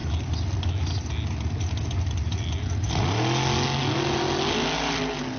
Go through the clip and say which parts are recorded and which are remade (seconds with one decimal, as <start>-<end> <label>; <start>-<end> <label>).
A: 0.0-5.4 recorded